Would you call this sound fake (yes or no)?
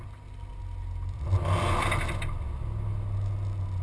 no